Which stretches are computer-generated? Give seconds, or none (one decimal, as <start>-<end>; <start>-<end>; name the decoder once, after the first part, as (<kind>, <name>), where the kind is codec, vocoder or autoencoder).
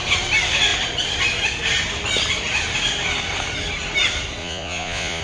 4.4-5.2 (vocoder, Vocos)